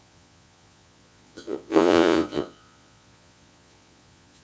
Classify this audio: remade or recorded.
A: remade